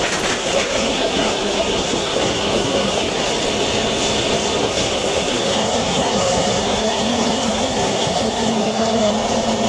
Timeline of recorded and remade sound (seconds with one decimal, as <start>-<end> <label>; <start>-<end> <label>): 0.0-0.4 recorded; 0.4-3.3 remade; 3.3-4.6 recorded; 4.6-9.1 remade; 9.1-9.7 recorded